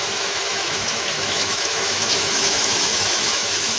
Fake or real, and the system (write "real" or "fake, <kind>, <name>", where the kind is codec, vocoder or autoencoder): fake, autoencoder, DAC-VAE